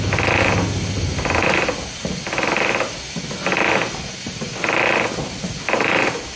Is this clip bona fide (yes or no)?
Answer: yes